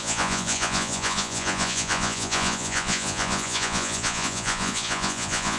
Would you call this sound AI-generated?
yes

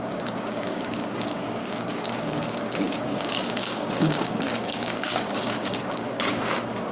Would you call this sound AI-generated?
yes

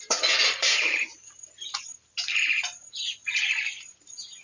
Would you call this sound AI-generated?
yes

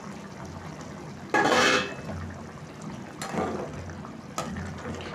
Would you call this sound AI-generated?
no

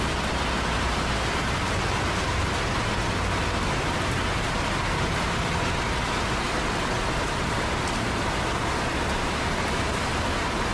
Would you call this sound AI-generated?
no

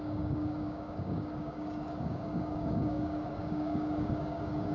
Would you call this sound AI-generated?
yes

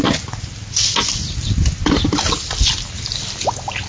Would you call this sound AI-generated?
no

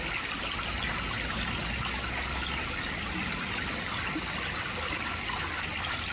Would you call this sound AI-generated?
no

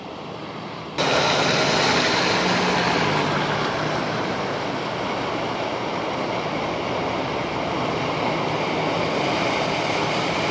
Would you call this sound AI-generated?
no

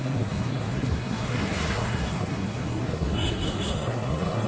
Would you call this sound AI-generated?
yes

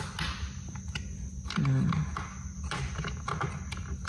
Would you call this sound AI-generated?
no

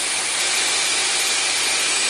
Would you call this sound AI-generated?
no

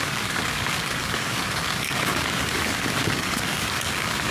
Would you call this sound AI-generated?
yes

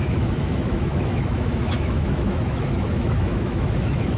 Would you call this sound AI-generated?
yes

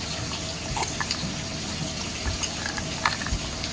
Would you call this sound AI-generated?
no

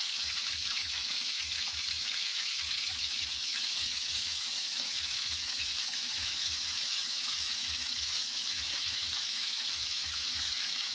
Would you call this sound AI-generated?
yes